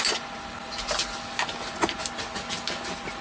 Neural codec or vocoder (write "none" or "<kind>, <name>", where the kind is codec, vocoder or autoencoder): none